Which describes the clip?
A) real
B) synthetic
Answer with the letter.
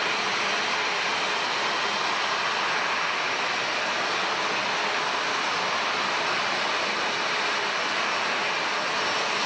A